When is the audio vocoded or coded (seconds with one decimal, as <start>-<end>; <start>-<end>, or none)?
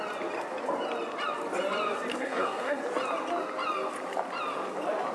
2.1-2.8